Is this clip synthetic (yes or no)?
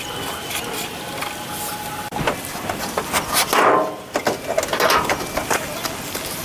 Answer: no